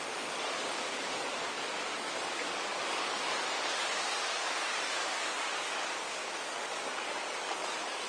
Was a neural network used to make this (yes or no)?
yes